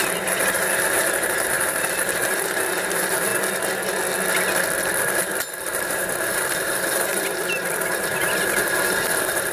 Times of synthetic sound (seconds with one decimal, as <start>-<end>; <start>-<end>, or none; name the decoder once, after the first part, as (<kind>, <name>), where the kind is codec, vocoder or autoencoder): 0.0-3.3 (vocoder, BigVGAN v2); 5.0-9.5